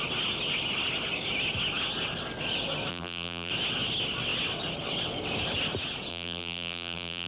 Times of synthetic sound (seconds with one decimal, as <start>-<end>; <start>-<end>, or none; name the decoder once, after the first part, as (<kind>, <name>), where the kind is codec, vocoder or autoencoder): 2.9-3.5 (vocoder, BigVGAN v2); 6.1-7.3